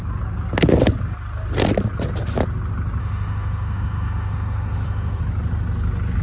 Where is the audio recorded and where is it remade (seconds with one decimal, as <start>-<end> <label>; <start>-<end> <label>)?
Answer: 0.0-3.0 recorded; 3.0-5.2 remade; 5.2-6.2 recorded